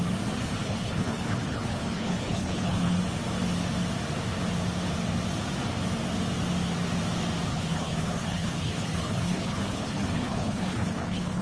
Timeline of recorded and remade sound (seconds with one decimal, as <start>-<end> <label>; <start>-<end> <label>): 0.0-0.6 recorded; 0.6-3.0 remade; 3.0-7.5 recorded; 7.5-11.4 remade